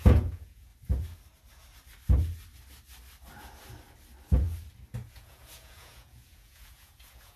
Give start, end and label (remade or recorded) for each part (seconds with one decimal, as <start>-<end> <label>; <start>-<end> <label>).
0.0-0.7 remade; 0.7-5.1 recorded; 5.1-7.4 remade